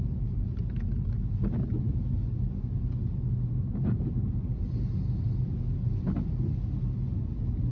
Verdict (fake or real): real